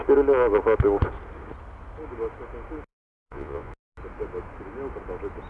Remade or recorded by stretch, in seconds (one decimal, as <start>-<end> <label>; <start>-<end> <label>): 0.0-2.9 recorded; 2.9-3.7 remade; 3.7-5.5 recorded